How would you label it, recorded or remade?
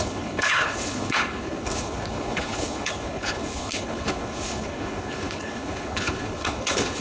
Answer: remade